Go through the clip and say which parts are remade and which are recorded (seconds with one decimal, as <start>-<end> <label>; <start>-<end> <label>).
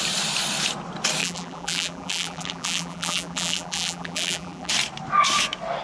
0.0-1.2 recorded; 1.2-4.7 remade; 4.7-5.8 recorded